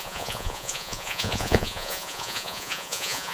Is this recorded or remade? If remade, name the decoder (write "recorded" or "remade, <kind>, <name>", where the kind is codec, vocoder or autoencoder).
remade, vocoder, Vocos